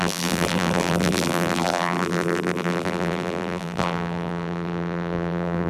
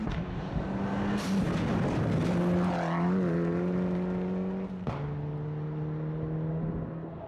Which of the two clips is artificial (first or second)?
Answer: first